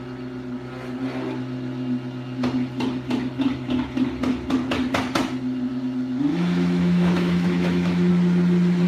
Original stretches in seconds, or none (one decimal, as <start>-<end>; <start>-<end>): 0.0-6.3; 8.1-8.9